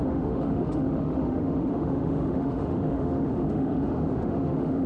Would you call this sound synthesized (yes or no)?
yes